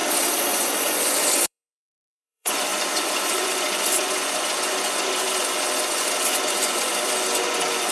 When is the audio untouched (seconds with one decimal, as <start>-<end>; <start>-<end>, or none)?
0.0-0.5